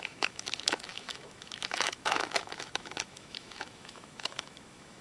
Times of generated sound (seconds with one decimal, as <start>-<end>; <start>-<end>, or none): 0.0-5.0